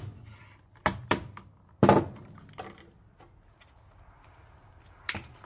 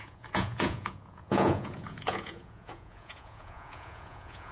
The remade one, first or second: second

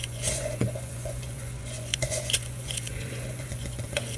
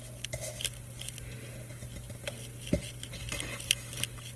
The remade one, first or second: first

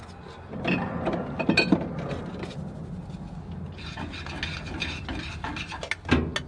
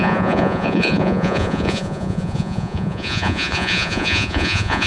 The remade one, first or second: second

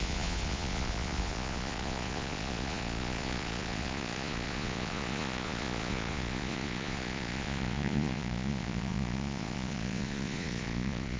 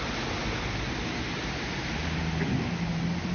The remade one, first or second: first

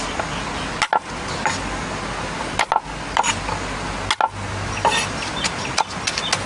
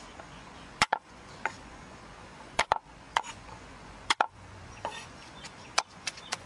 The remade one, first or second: second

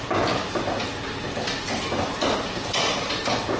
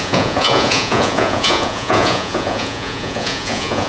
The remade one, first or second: second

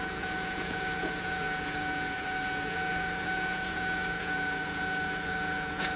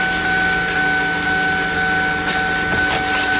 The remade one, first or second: first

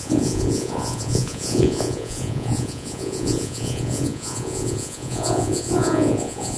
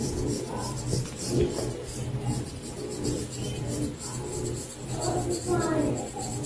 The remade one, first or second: first